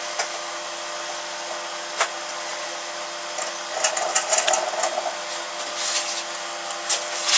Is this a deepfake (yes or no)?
no